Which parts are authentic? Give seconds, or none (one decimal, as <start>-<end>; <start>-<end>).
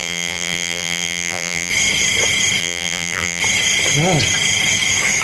1.7-2.6; 3.4-5.2